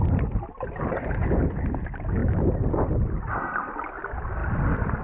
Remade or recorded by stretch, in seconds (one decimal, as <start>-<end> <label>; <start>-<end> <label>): 0.0-5.0 recorded